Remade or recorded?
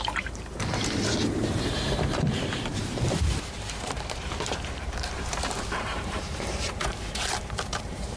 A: remade